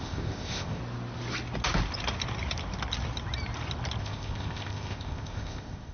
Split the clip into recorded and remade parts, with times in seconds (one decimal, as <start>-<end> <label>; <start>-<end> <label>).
0.0-0.8 remade; 0.8-4.0 recorded; 4.0-5.9 remade